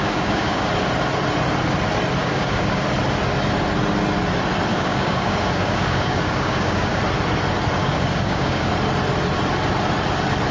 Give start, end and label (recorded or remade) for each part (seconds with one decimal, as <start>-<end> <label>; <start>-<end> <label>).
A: 0.0-0.7 remade; 0.7-2.2 recorded; 2.2-2.9 remade; 2.9-4.7 recorded; 4.7-7.0 remade; 7.0-7.8 recorded; 7.8-8.7 remade; 8.7-10.5 recorded

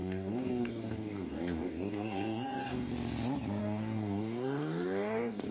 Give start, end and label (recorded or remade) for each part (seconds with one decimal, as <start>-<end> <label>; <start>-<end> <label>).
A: 0.0-2.9 remade; 2.9-3.6 recorded; 3.6-5.5 remade

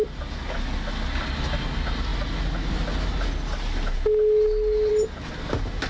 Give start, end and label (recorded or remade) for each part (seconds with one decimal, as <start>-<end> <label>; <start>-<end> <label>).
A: 0.0-5.9 recorded

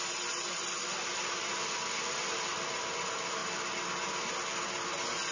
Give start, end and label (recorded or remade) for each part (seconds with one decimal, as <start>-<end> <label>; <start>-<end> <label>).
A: 0.0-5.3 recorded

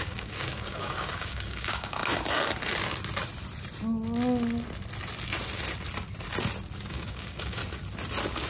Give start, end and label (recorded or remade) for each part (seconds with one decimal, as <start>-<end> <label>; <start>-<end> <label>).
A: 0.0-2.0 remade; 2.0-6.9 recorded; 6.9-7.6 remade; 7.6-8.5 recorded

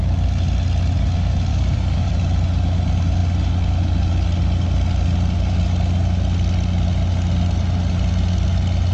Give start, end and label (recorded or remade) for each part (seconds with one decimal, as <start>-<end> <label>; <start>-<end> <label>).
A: 0.0-1.5 recorded; 1.5-2.1 remade; 2.1-8.9 recorded

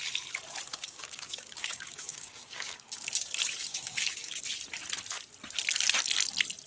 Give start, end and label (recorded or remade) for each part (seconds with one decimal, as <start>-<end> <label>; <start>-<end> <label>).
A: 0.0-0.7 recorded; 0.7-3.1 remade; 3.1-3.7 recorded; 3.7-4.4 remade; 4.4-6.7 recorded

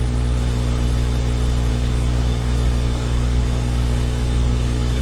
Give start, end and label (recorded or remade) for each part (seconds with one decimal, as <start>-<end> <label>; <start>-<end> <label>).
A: 0.0-1.7 recorded; 1.7-5.0 remade